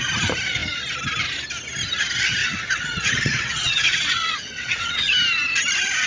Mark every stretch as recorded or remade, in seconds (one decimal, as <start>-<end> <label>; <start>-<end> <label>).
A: 0.0-2.4 recorded; 2.4-5.1 remade; 5.1-6.1 recorded